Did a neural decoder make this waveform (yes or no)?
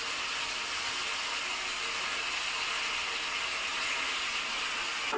no